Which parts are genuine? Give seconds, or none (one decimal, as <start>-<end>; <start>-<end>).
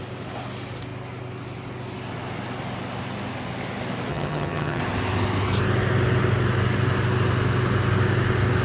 0.0-4.1; 4.8-8.6